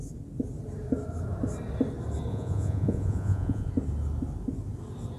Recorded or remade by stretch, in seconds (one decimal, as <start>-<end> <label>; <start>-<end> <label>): 0.0-2.3 recorded; 2.3-3.7 remade; 3.7-5.2 recorded